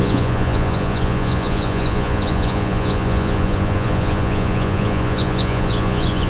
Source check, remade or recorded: remade